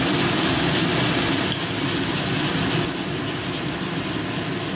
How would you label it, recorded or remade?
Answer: recorded